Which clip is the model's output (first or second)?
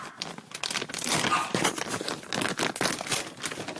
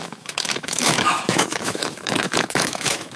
second